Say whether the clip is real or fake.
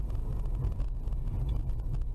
real